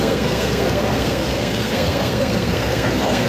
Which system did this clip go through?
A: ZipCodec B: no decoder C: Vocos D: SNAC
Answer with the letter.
D